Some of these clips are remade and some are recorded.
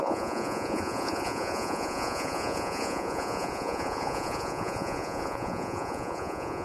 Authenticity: remade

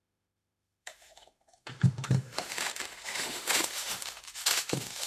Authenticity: remade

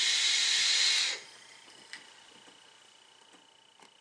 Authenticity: recorded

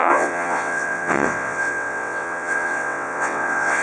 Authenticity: remade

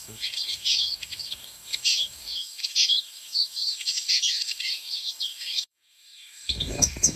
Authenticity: remade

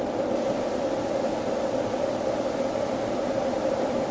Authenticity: recorded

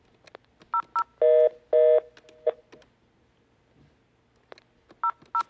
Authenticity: recorded